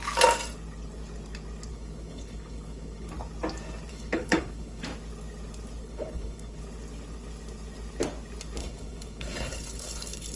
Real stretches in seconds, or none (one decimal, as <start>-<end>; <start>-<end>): 0.0-1.7; 3.1-3.9; 4.8-5.8; 6.6-8.6